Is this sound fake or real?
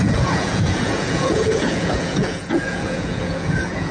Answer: fake